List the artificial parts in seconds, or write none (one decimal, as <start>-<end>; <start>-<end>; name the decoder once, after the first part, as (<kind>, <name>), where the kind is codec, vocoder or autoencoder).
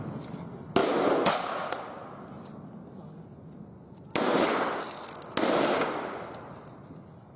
none